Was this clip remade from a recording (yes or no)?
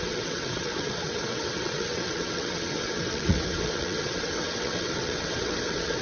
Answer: yes